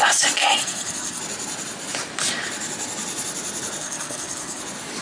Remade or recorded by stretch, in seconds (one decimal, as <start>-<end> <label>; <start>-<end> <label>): 0.0-0.4 recorded; 0.4-1.2 remade; 1.2-3.8 recorded; 3.8-4.6 remade; 4.6-5.0 recorded